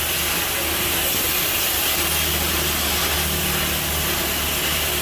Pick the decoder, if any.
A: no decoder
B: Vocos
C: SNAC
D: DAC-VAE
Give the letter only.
A